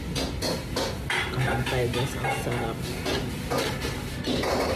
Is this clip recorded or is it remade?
recorded